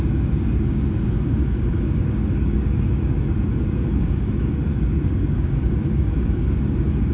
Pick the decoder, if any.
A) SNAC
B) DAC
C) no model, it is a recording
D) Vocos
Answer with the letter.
B